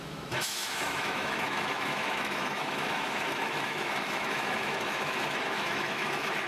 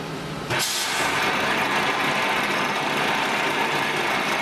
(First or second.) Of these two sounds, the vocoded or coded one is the first